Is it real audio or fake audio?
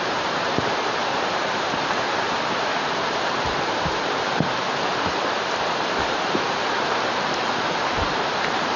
fake